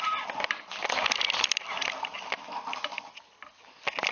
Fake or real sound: real